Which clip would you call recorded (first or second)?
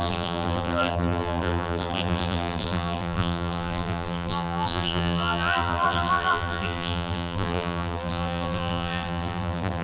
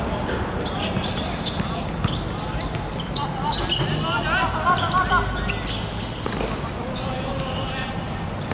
second